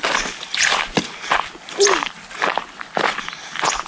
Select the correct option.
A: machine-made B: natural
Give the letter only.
B